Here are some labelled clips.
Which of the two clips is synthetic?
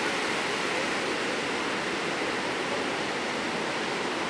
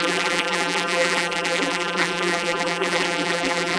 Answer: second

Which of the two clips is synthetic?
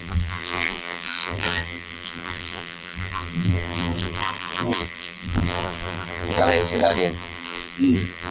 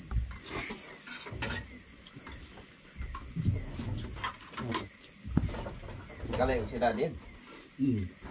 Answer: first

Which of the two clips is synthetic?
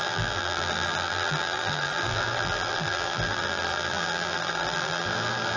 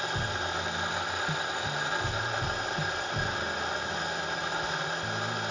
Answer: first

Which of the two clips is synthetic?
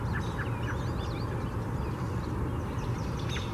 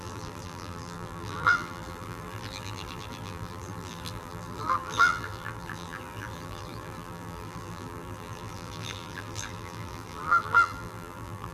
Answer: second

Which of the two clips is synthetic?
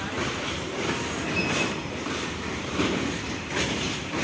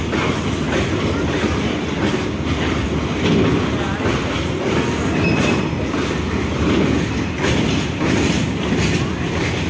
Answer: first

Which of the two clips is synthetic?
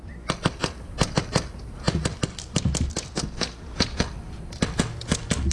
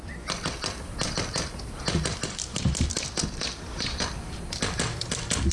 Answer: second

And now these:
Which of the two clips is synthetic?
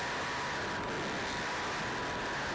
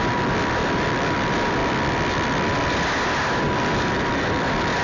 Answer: second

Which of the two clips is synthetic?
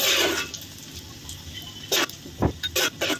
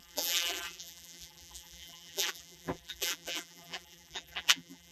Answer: second